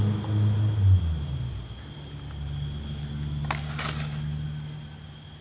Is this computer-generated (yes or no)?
no